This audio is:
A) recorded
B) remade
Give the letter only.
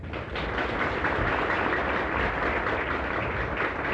A